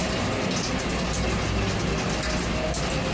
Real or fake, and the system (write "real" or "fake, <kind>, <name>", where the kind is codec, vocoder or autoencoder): real